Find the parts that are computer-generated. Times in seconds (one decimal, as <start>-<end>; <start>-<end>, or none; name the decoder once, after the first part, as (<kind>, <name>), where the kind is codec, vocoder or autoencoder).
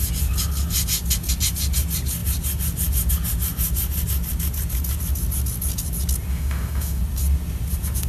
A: 6.3-7.0 (autoencoder, DAC-VAE)